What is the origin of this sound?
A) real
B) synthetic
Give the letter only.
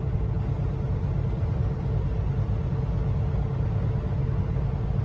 A